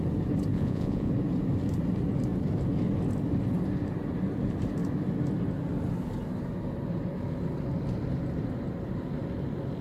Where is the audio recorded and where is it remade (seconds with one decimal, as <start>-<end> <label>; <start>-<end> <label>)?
0.0-0.5 recorded; 0.5-1.1 remade; 1.1-9.8 recorded